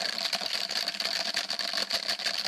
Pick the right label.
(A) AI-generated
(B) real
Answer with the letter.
B